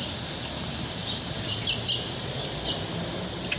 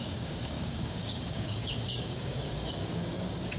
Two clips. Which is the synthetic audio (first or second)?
second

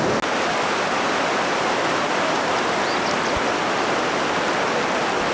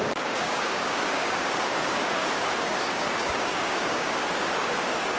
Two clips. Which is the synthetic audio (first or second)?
second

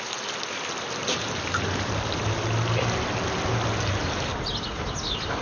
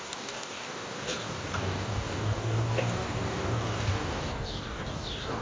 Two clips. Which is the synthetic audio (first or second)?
second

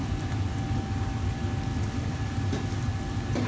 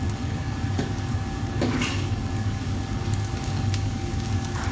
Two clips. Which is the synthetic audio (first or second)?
second